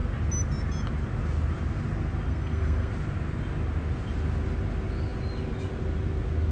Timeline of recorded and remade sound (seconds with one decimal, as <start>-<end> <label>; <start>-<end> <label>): 0.0-2.3 recorded; 2.3-2.9 remade; 2.9-6.5 recorded